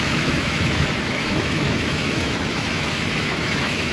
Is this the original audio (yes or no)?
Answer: no